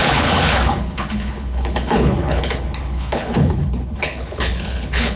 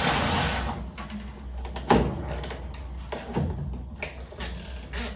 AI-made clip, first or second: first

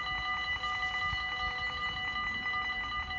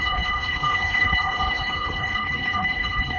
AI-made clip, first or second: second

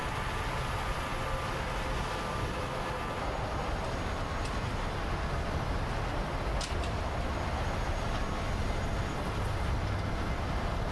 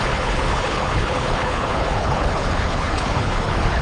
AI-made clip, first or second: second